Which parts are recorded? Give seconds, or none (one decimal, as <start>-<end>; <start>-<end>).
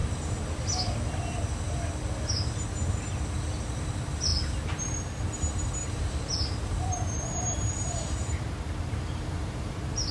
0.0-5.8